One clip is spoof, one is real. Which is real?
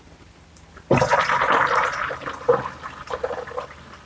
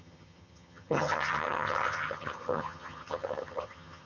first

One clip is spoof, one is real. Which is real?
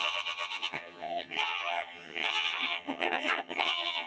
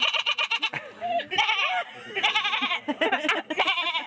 second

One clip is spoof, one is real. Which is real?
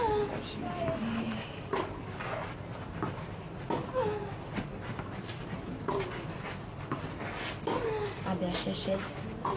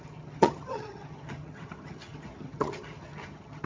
first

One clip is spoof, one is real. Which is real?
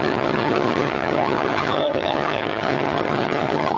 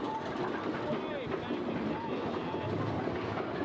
second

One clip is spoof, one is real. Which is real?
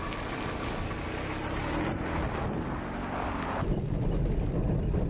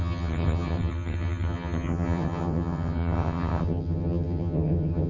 first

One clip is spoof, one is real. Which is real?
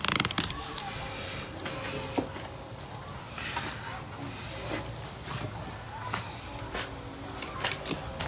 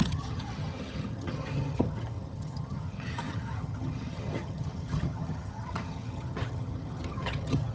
first